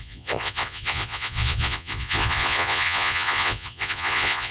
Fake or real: fake